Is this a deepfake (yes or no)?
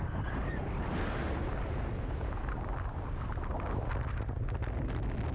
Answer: no